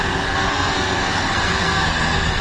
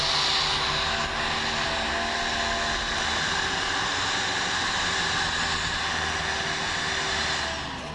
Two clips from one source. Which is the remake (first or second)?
first